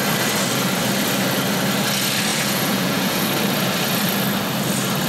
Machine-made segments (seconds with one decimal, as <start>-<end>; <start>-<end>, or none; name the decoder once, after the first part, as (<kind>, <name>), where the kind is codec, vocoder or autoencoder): 2.3-3.3 (vocoder, Vocos)